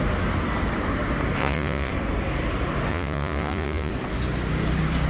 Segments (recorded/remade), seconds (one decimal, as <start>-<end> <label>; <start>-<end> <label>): 0.0-1.4 recorded; 1.4-1.9 remade; 1.9-2.9 recorded; 2.9-3.9 remade; 3.9-5.1 recorded